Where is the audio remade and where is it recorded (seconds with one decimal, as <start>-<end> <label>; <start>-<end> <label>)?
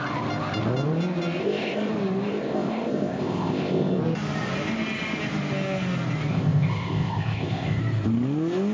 0.0-1.4 recorded; 1.4-1.9 remade; 1.9-2.3 recorded; 2.3-4.0 remade; 4.0-6.3 recorded; 6.3-7.8 remade; 7.8-8.7 recorded